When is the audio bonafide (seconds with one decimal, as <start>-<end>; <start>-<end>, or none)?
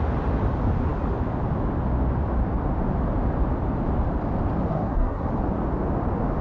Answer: 0.0-4.7; 5.3-6.4